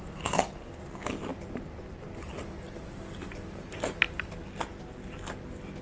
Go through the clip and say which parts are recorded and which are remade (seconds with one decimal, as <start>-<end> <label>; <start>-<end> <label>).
0.0-5.8 recorded